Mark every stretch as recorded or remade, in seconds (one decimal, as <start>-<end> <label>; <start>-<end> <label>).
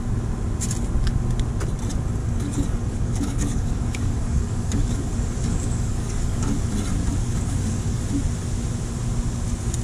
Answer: 0.0-2.2 recorded; 2.2-6.7 remade; 6.7-7.2 recorded; 7.2-8.0 remade; 8.0-9.8 recorded